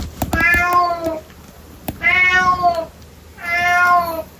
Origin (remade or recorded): recorded